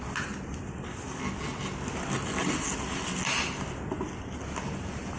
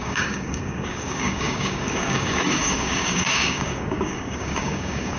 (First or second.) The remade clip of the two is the second